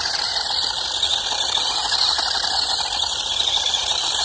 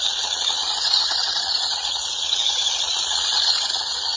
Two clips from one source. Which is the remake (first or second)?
second